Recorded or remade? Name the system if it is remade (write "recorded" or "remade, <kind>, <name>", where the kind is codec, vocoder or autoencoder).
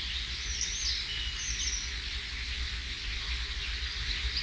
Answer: recorded